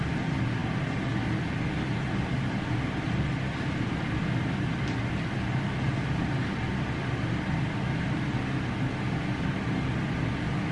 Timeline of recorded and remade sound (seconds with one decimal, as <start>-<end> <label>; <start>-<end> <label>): 0.0-10.7 recorded